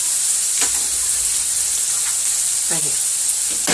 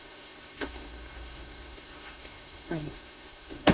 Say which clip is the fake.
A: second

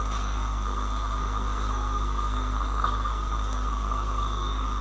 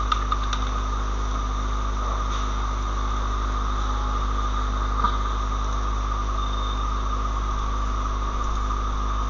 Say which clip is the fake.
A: first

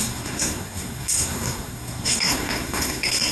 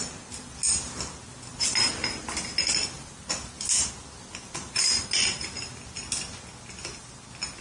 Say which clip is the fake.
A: first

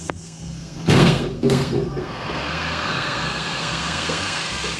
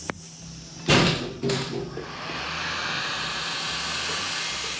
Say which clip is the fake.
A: first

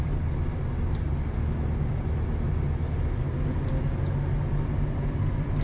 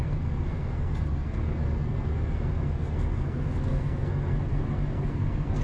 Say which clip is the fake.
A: second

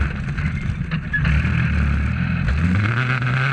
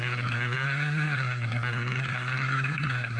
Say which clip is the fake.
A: second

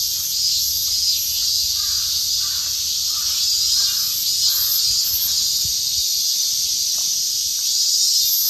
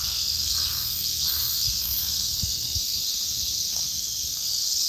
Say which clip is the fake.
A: second